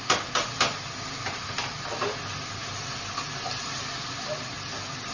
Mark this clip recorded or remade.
recorded